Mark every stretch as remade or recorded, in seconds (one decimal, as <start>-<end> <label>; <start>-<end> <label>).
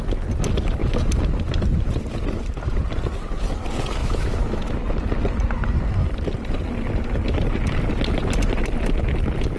0.0-4.0 recorded; 4.0-4.8 remade; 4.8-9.6 recorded